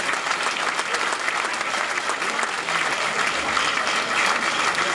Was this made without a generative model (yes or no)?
yes